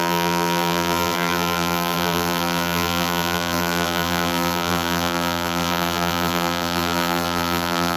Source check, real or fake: fake